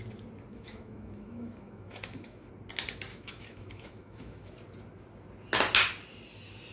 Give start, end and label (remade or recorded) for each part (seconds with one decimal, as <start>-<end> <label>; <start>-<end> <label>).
0.0-0.5 recorded; 0.5-2.5 remade; 2.5-3.1 recorded; 3.1-4.5 remade; 4.5-6.7 recorded